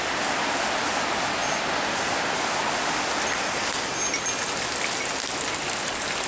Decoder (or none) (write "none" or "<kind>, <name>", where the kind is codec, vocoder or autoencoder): none